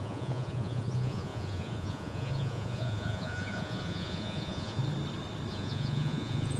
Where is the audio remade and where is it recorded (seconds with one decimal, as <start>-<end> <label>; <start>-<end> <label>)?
0.0-4.8 remade; 4.8-5.5 recorded; 5.5-6.6 remade

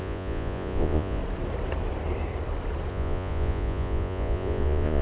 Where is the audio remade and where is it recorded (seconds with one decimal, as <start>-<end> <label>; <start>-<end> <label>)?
0.0-1.2 remade; 1.2-2.9 recorded; 2.9-5.0 remade

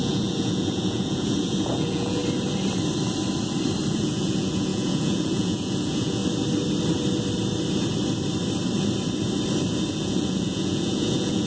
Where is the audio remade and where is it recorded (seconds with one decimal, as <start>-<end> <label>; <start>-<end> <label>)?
0.0-2.2 remade; 2.2-3.9 recorded; 3.9-6.2 remade; 6.2-9.9 recorded; 9.9-11.5 remade

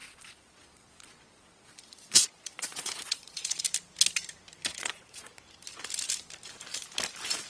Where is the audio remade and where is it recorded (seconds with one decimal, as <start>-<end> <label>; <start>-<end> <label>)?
0.0-3.6 remade; 3.6-4.7 recorded; 4.7-5.3 remade; 5.3-7.5 recorded